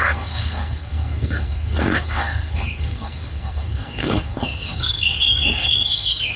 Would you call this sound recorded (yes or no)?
no